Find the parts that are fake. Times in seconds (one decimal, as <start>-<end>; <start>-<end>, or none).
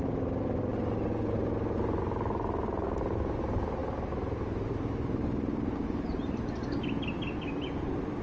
3.8-6.5